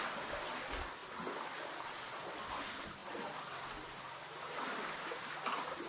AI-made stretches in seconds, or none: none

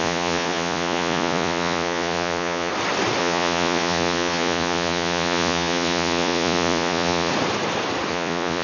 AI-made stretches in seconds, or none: 0.0-2.7 (vocoder, Vocos); 3.2-7.3; 8.1-8.6

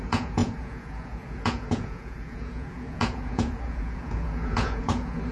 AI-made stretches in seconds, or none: 0.0-5.3 (vocoder, Vocos)

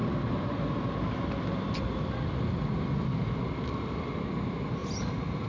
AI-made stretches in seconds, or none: none

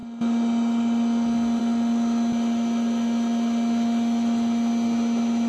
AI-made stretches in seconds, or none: none

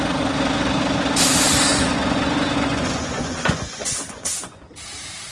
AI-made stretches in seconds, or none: 1.7-4.7 (vocoder, Vocos)

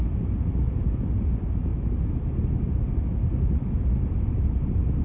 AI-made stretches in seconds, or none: none